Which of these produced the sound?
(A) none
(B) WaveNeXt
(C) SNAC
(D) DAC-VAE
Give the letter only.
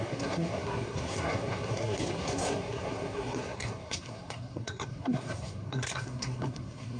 C